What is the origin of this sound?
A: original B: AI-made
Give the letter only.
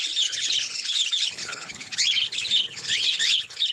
B